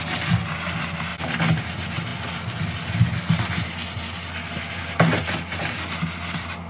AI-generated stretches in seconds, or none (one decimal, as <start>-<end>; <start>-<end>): none